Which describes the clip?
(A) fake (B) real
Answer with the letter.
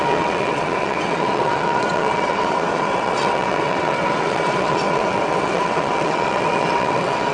A